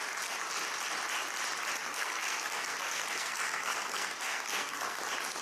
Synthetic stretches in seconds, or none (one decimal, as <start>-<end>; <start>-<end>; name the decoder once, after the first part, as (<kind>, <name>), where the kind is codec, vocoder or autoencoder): 1.8-5.0 (codec, SNAC)